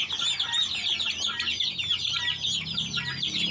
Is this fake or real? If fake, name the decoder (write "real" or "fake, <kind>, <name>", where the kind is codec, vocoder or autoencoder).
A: real